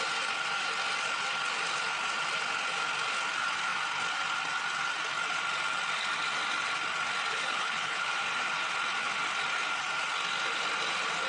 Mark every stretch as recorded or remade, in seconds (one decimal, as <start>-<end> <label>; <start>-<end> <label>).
0.0-7.3 recorded; 7.3-8.1 remade; 8.1-11.3 recorded

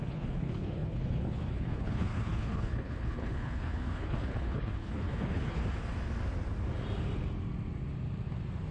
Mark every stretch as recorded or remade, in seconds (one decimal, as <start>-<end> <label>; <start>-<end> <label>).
0.0-5.6 remade; 5.6-8.7 recorded